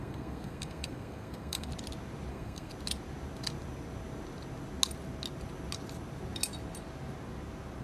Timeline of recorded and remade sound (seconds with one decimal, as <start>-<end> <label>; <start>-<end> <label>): 0.0-1.7 remade; 1.7-2.3 recorded; 2.3-2.7 remade; 2.7-7.8 recorded